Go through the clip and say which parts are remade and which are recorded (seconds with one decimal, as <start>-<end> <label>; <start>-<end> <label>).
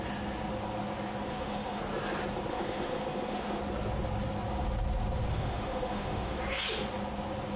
0.0-1.3 recorded; 1.3-1.8 remade; 1.8-2.5 recorded; 2.5-3.6 remade; 3.6-5.3 recorded; 5.3-6.4 remade; 6.4-7.6 recorded